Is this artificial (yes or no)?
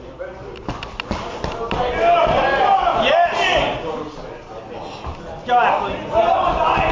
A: no